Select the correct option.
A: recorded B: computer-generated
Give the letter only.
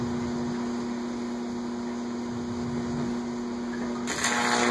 A